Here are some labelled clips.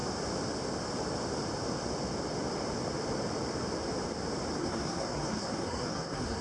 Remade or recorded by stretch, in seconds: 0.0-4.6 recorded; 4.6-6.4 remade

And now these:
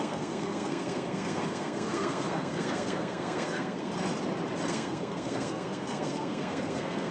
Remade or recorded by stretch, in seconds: 0.0-3.9 remade; 3.9-4.7 recorded; 4.7-7.1 remade